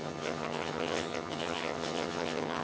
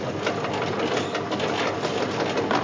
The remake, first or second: first